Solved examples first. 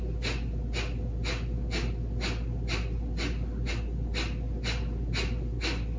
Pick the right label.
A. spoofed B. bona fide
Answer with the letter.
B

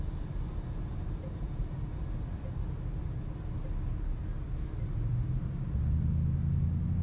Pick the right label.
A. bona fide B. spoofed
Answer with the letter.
A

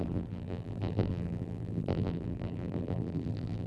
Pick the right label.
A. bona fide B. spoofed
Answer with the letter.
B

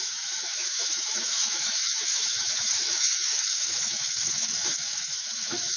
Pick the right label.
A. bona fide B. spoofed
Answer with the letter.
B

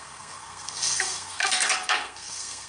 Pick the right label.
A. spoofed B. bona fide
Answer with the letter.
A